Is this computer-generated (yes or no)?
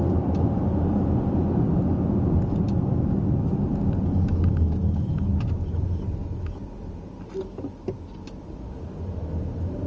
no